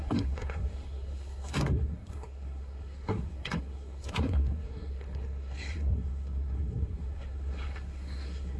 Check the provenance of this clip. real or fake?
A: fake